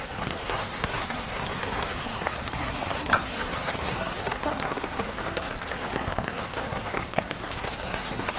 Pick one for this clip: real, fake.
fake